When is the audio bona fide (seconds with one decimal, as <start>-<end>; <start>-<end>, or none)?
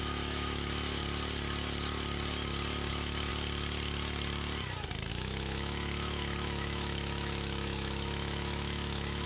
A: 1.0-2.9; 3.3-5.1